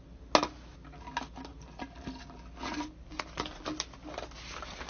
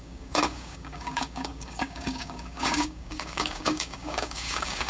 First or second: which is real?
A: first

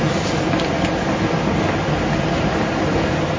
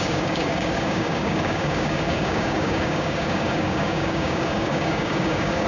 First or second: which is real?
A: first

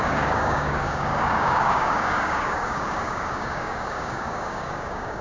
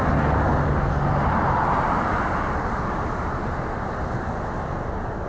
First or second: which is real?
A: second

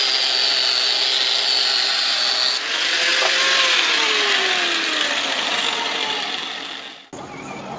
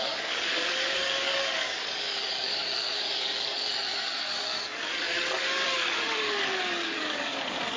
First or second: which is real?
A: first